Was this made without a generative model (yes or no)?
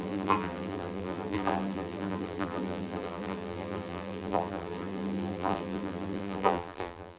no